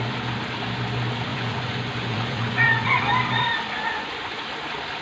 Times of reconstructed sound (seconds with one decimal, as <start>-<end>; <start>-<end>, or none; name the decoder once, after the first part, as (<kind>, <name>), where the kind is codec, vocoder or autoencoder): 1.3-3.0 (vocoder, Vocos); 3.9-4.4